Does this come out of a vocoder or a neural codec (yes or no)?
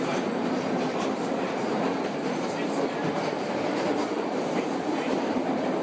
yes